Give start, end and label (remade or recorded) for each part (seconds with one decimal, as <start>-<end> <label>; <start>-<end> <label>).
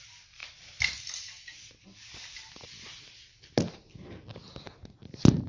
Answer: 0.0-5.5 recorded